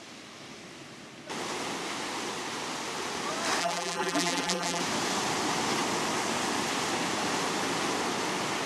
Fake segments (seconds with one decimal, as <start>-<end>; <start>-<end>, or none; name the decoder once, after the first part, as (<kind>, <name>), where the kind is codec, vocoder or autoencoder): 3.6-4.8 (vocoder, BigVGAN v2)